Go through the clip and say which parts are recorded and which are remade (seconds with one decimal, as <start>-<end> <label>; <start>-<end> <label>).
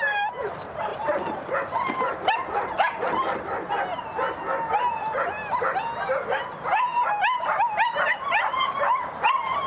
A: 0.0-0.9 recorded; 0.9-3.7 remade; 3.7-6.9 recorded; 6.9-8.5 remade; 8.5-9.7 recorded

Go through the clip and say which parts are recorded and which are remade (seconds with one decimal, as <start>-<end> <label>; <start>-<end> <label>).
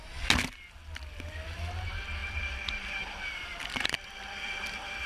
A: 0.0-2.2 recorded; 2.2-5.1 remade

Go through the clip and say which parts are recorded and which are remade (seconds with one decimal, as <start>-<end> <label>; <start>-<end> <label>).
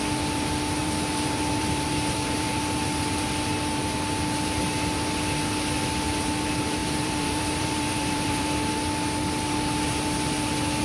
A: 0.0-0.8 recorded; 0.8-2.6 remade; 2.6-6.8 recorded; 6.8-8.7 remade; 8.7-10.8 recorded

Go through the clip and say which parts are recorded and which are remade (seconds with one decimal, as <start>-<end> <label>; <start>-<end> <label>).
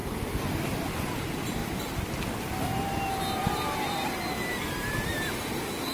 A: 0.0-0.7 remade; 0.7-5.9 recorded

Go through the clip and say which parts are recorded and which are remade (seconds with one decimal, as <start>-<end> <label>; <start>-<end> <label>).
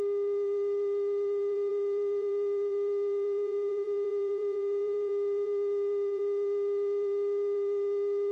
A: 0.0-8.3 remade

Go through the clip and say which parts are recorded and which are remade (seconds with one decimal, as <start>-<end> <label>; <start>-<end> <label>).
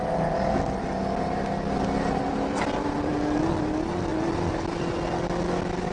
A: 0.0-2.3 recorded; 2.3-3.1 remade; 3.1-4.1 recorded; 4.1-4.9 remade; 4.9-5.9 recorded